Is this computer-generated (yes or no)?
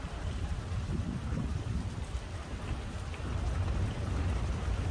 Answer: no